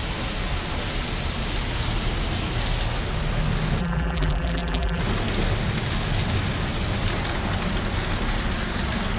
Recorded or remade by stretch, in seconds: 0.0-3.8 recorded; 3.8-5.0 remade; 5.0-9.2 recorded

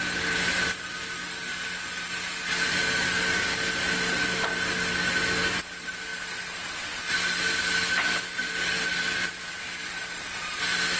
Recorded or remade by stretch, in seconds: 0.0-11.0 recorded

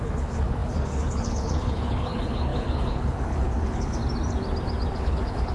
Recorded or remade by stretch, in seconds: 0.0-4.0 remade; 4.0-4.9 recorded; 4.9-5.5 remade